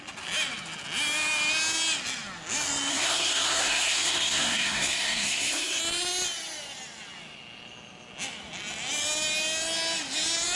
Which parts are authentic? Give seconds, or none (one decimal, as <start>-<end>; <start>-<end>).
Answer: 0.0-2.9; 5.8-10.6